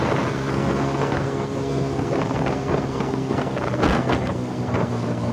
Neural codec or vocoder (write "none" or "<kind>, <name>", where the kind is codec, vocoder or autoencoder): codec, SNAC